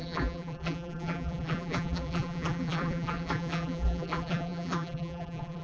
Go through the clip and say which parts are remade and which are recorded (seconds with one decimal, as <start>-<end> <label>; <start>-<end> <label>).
0.0-5.6 remade